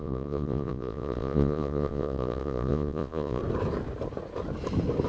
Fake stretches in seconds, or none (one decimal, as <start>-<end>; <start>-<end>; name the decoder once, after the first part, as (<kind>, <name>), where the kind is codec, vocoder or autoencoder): 0.0-3.4 (vocoder, Vocos)